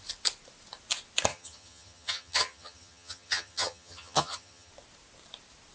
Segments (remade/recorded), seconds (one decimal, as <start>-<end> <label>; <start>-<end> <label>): 0.0-1.3 recorded; 1.3-4.7 remade; 4.7-5.7 recorded